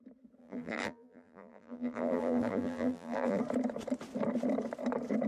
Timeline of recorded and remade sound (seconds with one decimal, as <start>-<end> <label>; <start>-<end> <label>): 0.0-0.4 recorded; 0.4-3.4 remade; 3.4-5.3 recorded